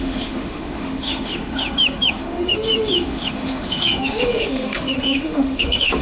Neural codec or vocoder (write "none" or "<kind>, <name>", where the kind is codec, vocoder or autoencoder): autoencoder, DAC-VAE